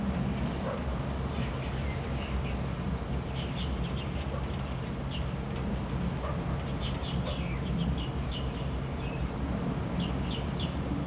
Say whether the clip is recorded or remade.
recorded